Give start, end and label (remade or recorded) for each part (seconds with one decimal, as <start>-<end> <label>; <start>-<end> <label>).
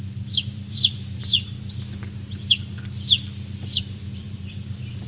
0.0-2.0 remade; 2.0-3.8 recorded; 3.8-5.1 remade